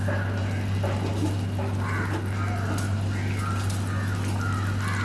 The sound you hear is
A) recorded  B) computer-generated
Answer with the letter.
A